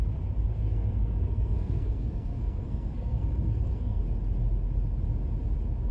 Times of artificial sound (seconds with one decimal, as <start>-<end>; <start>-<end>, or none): 0.5-4.0